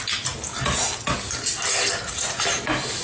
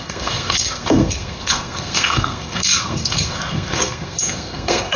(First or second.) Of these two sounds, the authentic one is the first